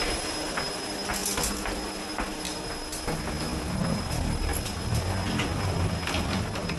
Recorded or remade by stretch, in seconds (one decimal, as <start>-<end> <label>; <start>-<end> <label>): 0.0-6.8 recorded